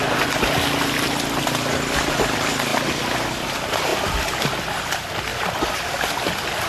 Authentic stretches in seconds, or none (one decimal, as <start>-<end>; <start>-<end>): 0.0-3.9; 4.7-5.3; 6.1-6.7